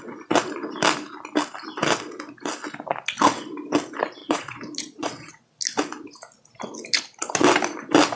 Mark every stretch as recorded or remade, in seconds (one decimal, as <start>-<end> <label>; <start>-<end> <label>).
0.0-4.2 recorded; 4.2-5.3 remade; 5.3-8.2 recorded